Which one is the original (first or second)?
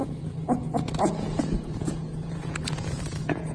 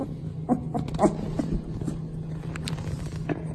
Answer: second